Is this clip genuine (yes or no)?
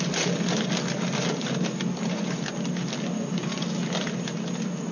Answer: yes